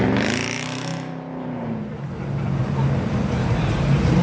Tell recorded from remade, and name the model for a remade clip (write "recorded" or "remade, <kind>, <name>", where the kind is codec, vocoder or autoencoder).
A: recorded